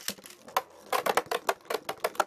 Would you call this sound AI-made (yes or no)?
no